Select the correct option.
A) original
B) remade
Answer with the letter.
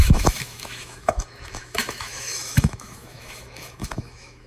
B